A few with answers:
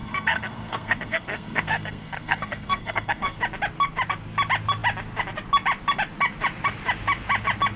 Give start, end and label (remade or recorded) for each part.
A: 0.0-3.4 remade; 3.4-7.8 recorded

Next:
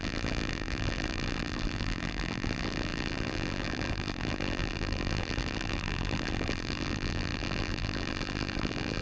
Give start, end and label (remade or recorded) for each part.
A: 0.0-9.0 remade

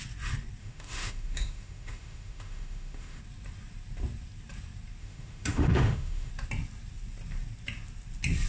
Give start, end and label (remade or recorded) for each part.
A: 0.0-0.6 recorded; 0.6-3.2 remade; 3.2-5.0 recorded; 5.0-6.3 remade; 6.3-8.5 recorded